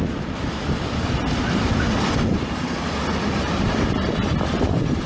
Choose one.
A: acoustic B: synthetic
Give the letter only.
A